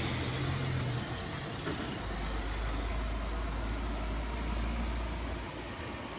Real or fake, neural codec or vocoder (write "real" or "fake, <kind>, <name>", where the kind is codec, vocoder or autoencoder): real